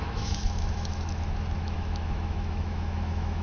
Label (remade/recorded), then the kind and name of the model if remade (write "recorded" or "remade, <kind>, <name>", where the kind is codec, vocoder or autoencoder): remade, autoencoder, DAC-VAE